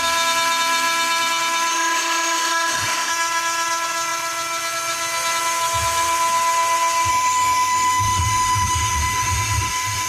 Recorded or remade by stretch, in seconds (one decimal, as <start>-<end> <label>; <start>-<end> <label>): 0.0-1.7 recorded; 1.7-3.1 remade; 3.1-7.1 recorded; 7.1-10.1 remade